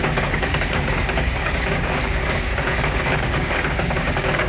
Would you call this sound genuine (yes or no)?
no